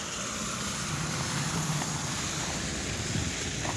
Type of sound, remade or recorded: recorded